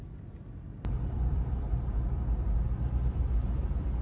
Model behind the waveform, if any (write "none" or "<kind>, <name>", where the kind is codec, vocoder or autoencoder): none